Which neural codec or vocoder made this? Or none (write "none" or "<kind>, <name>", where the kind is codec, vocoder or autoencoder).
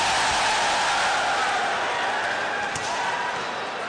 none